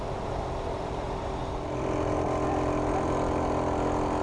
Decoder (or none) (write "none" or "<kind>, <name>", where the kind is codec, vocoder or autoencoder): none